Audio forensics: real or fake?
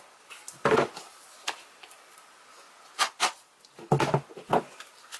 real